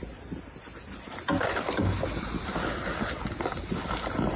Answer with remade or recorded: recorded